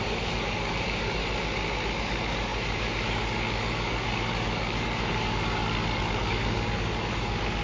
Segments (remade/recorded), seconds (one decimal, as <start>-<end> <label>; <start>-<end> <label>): 0.0-1.2 remade; 1.2-2.0 recorded; 2.0-7.6 remade